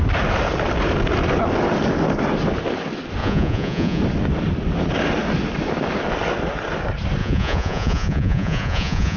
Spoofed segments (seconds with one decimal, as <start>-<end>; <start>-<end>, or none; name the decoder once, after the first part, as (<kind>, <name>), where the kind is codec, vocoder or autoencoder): 3.2-4.0 (vocoder, Vocos); 7.2-9.2